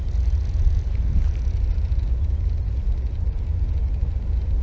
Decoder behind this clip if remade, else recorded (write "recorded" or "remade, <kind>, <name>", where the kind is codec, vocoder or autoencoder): recorded